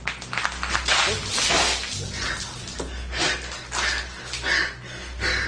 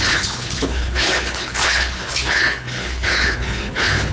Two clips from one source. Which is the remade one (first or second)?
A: second